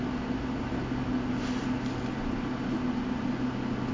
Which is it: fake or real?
real